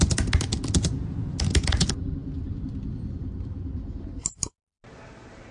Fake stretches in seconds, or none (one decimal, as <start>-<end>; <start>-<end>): 2.2-3.9